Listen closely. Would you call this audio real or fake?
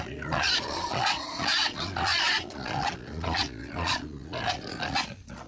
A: fake